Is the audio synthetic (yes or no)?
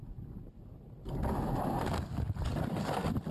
no